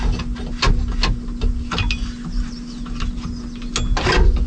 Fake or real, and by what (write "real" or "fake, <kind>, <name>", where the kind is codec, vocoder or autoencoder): real